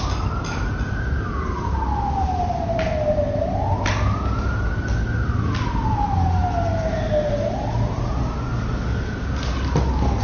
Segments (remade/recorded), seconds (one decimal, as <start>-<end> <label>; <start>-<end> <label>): 0.0-10.2 recorded